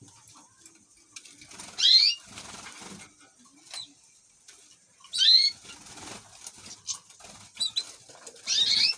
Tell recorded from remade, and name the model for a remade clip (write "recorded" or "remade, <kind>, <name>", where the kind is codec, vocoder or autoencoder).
recorded